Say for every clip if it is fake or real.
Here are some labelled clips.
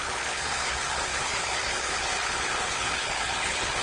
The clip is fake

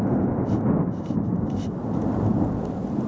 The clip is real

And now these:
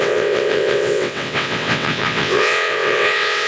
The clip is fake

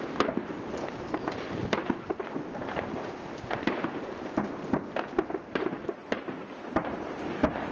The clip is fake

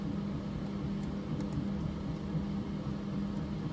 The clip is real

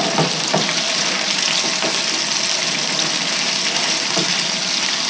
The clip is real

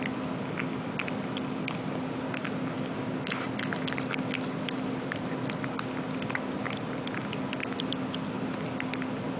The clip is real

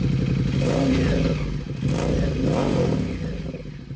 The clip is real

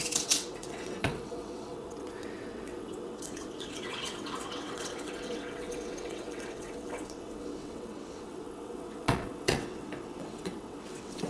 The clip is fake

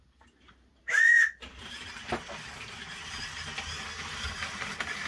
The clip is real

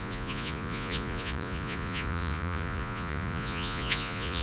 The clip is fake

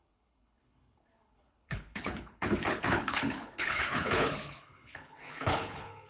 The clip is fake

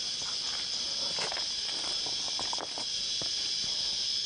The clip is real